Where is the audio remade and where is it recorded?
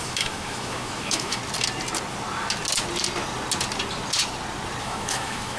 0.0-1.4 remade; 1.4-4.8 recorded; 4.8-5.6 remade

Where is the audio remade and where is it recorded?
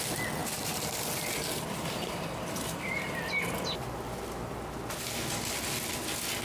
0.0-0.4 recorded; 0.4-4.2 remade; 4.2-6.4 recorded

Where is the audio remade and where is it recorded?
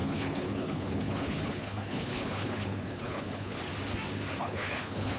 0.0-3.7 remade; 3.7-4.4 recorded; 4.4-5.2 remade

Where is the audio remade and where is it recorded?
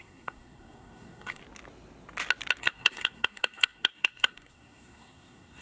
0.0-1.4 remade; 1.4-2.6 recorded; 2.6-5.6 remade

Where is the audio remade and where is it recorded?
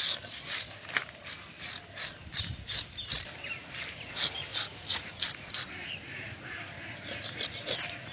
0.0-4.5 recorded; 4.5-5.2 remade; 5.2-5.8 recorded; 5.8-6.6 remade; 6.6-8.1 recorded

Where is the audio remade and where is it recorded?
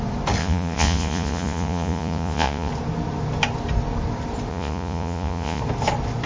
0.0-0.4 recorded; 0.4-2.7 remade; 2.7-4.5 recorded; 4.5-5.6 remade; 5.6-6.3 recorded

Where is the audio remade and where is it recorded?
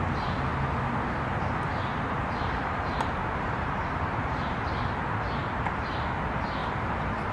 0.0-1.9 recorded; 1.9-4.6 remade; 4.6-5.4 recorded; 5.4-6.0 remade; 6.0-6.6 recorded; 6.6-7.3 remade